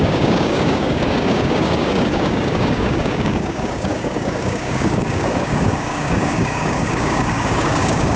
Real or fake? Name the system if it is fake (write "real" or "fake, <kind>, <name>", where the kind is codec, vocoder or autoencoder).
fake, codec, DAC